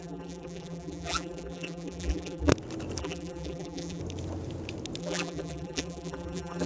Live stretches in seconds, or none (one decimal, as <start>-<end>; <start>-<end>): 2.5-3.0; 4.0-5.0